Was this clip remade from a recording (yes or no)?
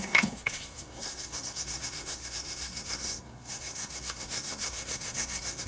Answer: yes